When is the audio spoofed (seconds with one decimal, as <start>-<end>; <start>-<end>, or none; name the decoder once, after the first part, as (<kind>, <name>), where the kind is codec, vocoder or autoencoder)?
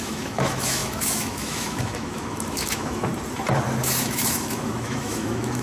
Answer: 0.0-3.1 (autoencoder, DAC-VAE); 3.8-5.6